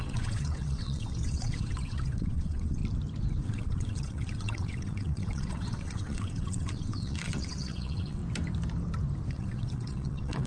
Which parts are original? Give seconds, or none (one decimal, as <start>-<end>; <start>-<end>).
2.8-3.4; 8.2-9.3